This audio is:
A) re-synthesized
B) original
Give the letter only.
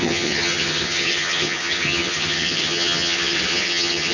A